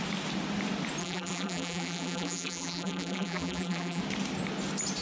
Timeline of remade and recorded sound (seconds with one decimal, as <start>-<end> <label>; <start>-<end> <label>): 0.0-1.0 recorded; 1.0-4.0 remade; 4.0-5.0 recorded